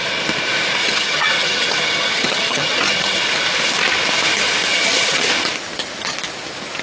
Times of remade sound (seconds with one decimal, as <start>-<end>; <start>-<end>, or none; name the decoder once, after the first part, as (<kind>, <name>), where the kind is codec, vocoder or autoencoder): 0.8-3.2 (vocoder, HiFi-GAN); 4.7-5.3